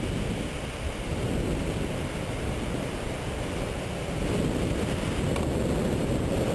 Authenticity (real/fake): real